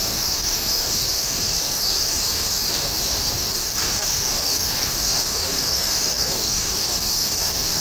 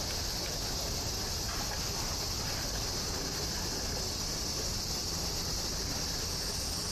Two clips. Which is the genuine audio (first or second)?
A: second